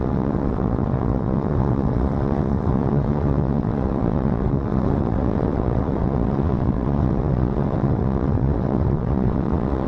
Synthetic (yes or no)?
yes